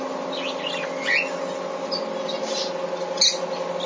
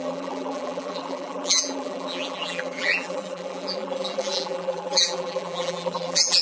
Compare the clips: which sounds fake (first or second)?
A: second